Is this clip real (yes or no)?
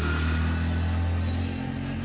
yes